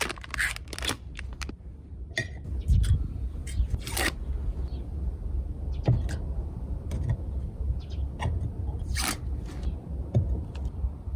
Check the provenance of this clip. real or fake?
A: real